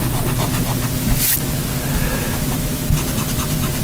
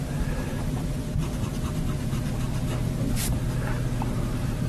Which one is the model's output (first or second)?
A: second